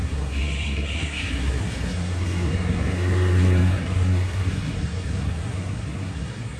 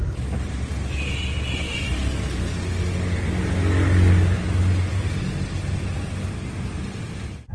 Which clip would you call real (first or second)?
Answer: second